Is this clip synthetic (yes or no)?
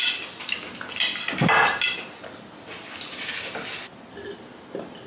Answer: no